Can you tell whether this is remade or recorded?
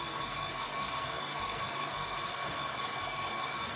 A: remade